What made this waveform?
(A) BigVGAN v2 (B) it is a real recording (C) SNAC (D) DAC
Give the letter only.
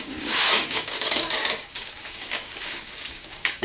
D